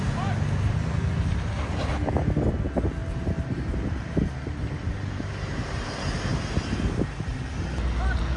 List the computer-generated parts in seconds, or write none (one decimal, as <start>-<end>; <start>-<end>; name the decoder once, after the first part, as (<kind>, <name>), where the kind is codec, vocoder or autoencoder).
none